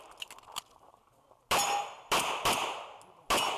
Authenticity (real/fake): real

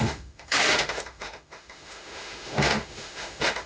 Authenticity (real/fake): fake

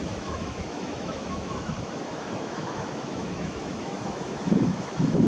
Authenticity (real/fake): fake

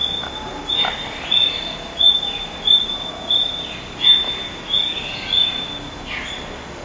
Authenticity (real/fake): real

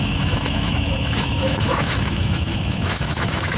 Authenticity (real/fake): fake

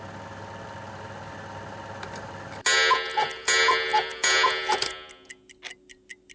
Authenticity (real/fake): real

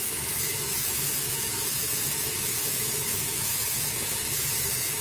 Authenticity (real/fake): fake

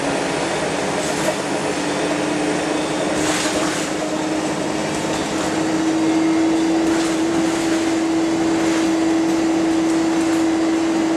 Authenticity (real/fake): real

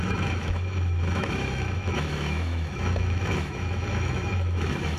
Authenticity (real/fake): fake